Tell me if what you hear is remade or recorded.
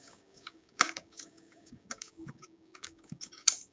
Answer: remade